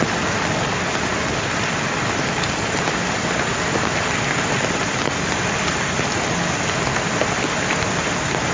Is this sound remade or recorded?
recorded